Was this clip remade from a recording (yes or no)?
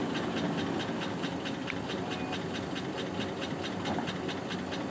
no